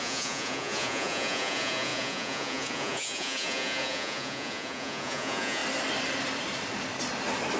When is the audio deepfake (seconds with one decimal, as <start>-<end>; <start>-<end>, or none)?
0.0-5.6